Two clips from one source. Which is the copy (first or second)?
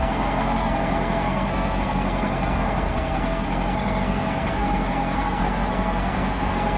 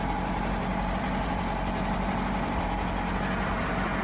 first